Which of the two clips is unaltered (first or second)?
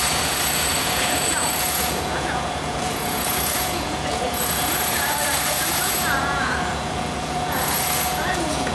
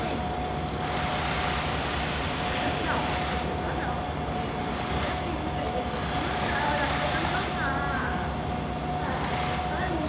second